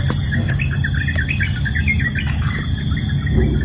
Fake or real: real